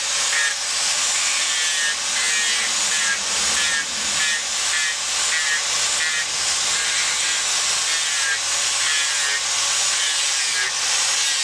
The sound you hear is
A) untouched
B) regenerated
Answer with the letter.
A